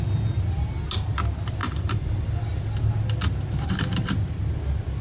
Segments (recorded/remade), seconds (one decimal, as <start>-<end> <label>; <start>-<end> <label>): 0.0-5.0 recorded